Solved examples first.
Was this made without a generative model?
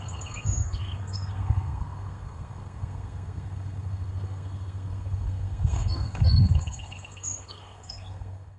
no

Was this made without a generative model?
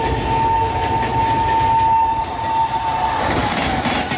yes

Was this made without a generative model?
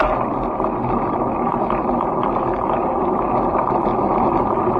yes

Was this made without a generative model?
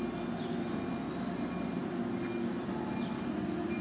yes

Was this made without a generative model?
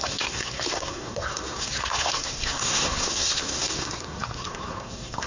no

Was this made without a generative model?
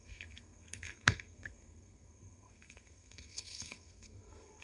no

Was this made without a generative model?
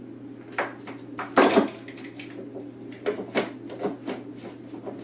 yes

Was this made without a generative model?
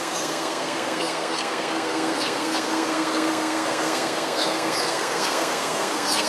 no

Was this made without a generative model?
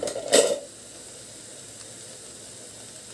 yes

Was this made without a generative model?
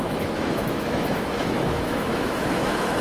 no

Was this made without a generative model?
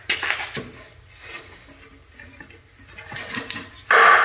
yes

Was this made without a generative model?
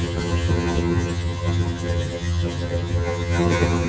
no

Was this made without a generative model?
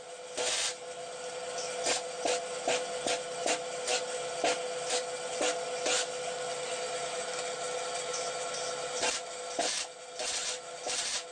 yes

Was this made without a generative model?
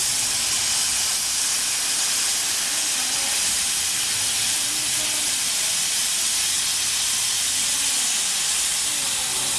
yes